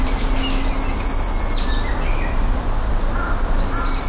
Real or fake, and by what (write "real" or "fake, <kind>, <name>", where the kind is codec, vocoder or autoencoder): real